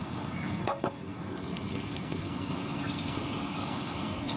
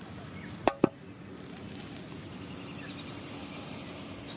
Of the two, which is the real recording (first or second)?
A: second